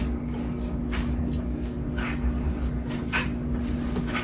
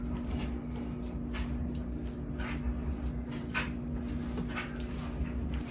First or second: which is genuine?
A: second